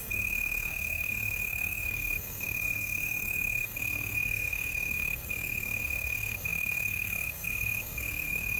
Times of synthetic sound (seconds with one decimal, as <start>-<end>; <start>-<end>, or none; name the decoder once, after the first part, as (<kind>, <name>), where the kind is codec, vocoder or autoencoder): 0.0-8.6 (codec, SNAC)